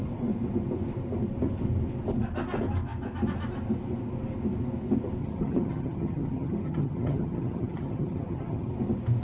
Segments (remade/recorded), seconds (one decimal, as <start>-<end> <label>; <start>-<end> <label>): 0.0-5.2 recorded; 5.2-8.7 remade; 8.7-9.2 recorded